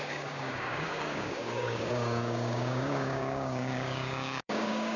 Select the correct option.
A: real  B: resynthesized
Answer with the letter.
B